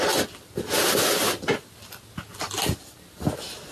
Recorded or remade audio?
recorded